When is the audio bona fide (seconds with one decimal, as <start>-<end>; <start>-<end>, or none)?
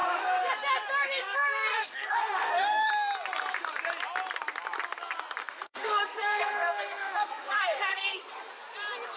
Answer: 0.5-0.9; 2.9-5.4; 8.5-9.2